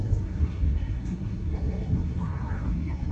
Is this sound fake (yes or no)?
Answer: yes